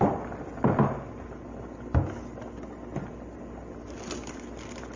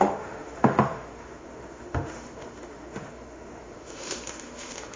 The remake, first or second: second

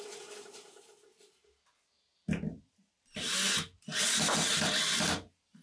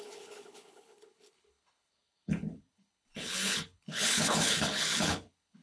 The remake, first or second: second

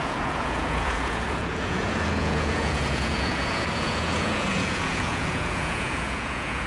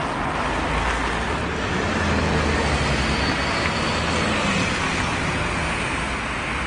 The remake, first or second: first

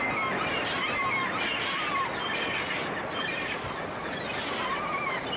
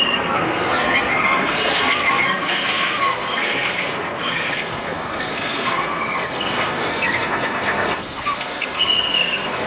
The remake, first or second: second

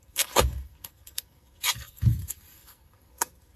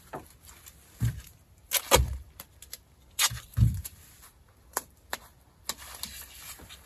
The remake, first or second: first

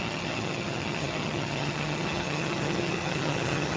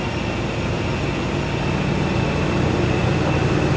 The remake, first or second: first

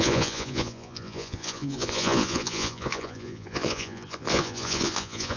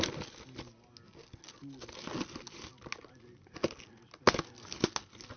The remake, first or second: first